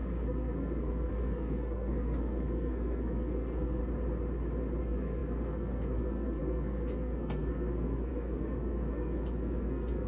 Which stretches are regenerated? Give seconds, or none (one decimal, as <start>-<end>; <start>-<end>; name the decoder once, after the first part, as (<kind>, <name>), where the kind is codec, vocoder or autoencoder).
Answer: 0.0-3.8 (codec, SNAC); 4.8-10.1